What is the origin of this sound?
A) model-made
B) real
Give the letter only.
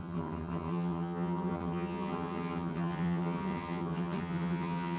A